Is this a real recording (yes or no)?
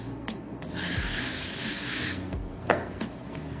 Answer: no